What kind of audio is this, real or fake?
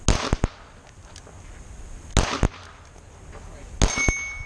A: real